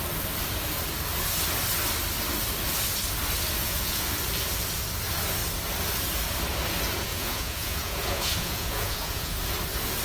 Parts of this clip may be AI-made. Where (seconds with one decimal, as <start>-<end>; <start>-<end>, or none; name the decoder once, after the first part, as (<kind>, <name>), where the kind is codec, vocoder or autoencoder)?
3.6-4.1 (vocoder, Vocos); 7.1-9.3